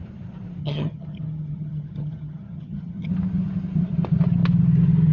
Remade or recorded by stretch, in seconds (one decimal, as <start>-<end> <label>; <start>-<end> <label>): 0.0-0.6 recorded; 0.6-3.1 remade; 3.1-5.1 recorded